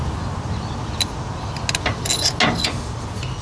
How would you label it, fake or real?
real